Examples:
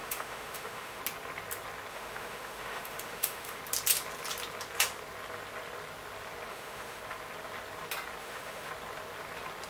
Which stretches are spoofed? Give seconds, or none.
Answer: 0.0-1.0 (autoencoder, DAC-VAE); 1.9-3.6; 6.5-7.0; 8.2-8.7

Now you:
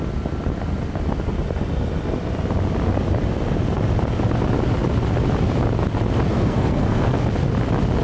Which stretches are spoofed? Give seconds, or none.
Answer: 6.3-7.2 (codec, SNAC)

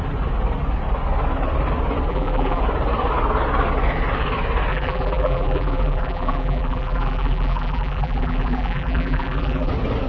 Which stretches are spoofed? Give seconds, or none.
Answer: 2.1-2.6 (vocoder, BigVGAN v2); 4.7-9.7

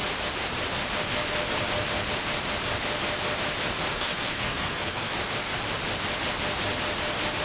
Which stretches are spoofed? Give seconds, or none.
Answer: 3.9-5.1 (codec, SNAC)

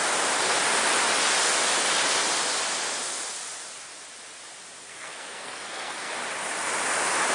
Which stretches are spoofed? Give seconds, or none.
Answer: 4.9-6.1 (codec, SNAC)

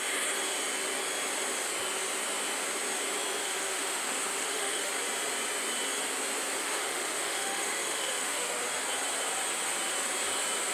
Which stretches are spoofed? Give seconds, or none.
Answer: 3.4-4.9 (autoencoder, DAC-VAE); 6.6-8.6